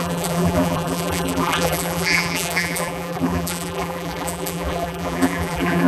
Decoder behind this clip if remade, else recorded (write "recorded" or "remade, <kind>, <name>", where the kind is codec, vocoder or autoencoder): remade, vocoder, BigVGAN v2